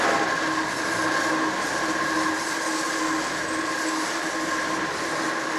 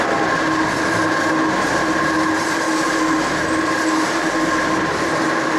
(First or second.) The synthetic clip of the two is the second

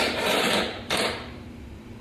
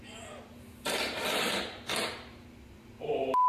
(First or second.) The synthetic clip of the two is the first